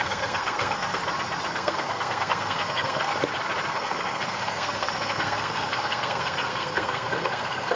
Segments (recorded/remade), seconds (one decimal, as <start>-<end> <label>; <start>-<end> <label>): 0.0-1.0 remade; 1.0-1.5 recorded; 1.5-3.1 remade; 3.1-3.7 recorded; 3.7-7.8 remade